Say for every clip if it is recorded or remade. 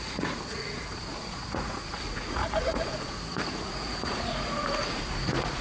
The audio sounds remade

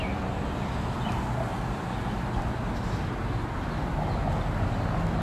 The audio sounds recorded